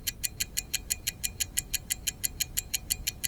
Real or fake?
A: fake